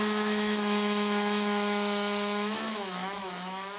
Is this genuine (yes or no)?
no